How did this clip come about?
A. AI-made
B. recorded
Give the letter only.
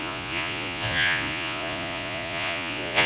A